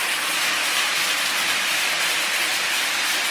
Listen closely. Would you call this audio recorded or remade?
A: recorded